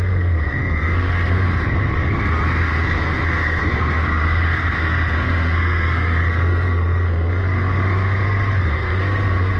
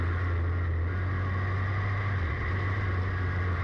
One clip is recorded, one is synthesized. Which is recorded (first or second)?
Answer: second